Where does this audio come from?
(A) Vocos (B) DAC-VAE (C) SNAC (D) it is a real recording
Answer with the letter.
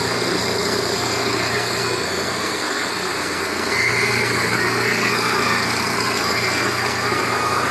C